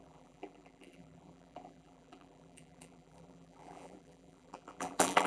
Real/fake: fake